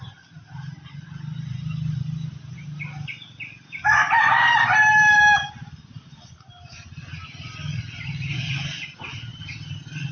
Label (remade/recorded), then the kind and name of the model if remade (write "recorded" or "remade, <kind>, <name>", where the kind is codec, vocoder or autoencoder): recorded